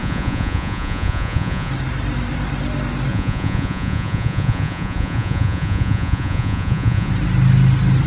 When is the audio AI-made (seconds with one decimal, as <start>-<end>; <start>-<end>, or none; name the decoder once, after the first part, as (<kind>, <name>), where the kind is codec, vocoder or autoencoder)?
0.0-1.7 (vocoder, Vocos); 3.1-7.1